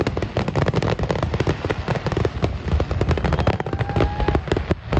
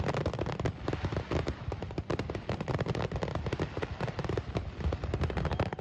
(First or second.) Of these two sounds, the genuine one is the first